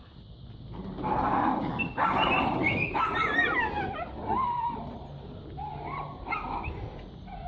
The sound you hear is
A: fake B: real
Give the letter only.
B